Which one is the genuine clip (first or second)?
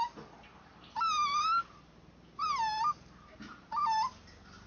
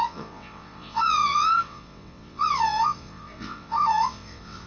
first